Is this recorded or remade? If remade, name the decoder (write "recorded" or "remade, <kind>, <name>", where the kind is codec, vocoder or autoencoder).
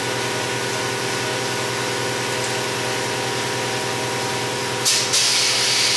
recorded